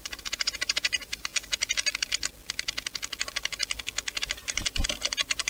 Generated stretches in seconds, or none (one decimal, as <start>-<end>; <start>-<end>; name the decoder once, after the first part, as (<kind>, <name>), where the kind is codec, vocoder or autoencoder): 0.0-1.3 (vocoder, BigVGAN v2); 4.2-5.5